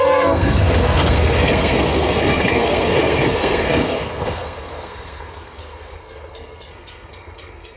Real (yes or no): no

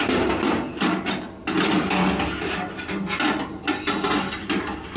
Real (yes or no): yes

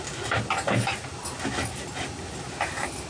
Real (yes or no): yes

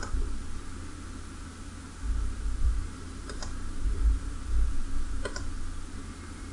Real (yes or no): yes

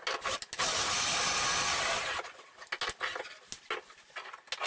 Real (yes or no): yes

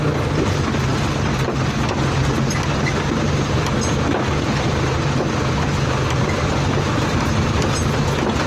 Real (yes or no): yes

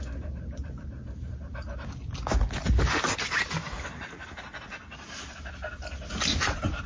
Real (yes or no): yes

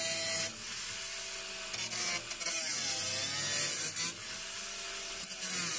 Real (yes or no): yes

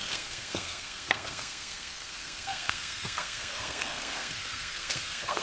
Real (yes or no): no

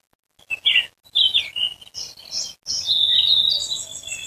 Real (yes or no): yes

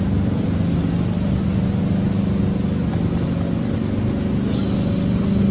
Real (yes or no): yes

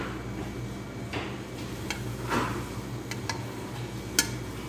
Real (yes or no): yes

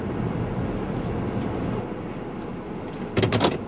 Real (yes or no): yes